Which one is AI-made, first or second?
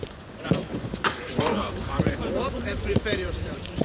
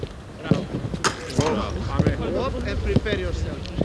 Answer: first